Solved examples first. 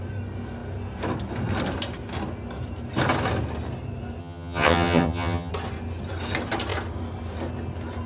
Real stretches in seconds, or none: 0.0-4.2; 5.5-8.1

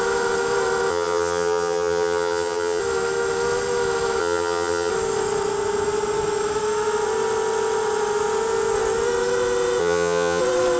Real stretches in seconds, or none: 0.0-0.9; 2.8-4.2; 4.9-9.8; 10.4-10.8